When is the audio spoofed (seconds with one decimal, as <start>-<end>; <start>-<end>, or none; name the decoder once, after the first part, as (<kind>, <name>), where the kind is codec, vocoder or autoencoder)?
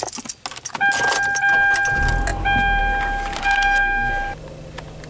3.4-4.1 (codec, SNAC)